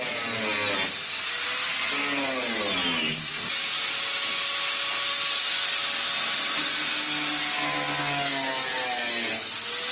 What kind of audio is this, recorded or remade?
recorded